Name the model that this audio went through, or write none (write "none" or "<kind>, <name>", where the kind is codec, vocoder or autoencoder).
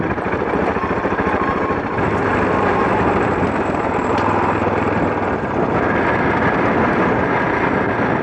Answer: none